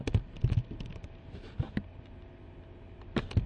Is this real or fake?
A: real